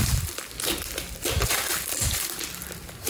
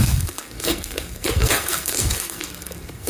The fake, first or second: second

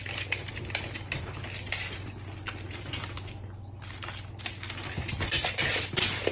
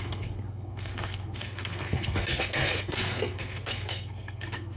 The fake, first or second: second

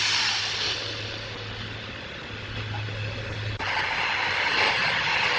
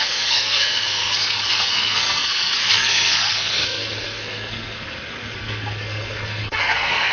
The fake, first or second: second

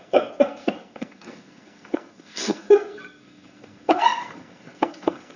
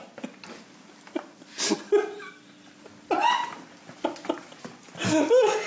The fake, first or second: first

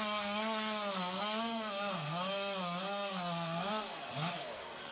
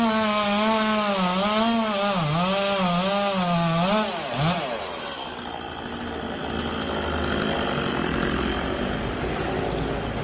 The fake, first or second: first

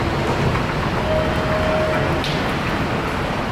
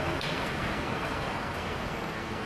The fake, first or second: second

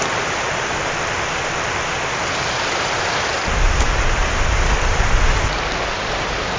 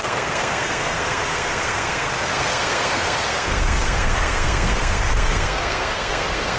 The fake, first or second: second